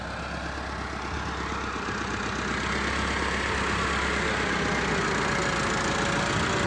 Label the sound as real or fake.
real